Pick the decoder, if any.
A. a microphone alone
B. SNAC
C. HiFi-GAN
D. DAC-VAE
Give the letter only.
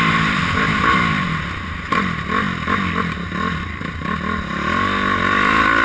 A